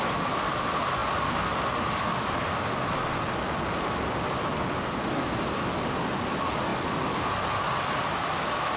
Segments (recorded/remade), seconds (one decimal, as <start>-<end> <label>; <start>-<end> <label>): 0.0-8.8 recorded